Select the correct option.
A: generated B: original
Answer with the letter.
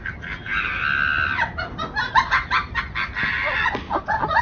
B